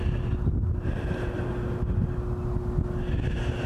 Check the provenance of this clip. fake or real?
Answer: real